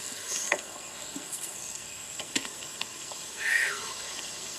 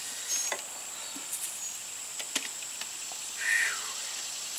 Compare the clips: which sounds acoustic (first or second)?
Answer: second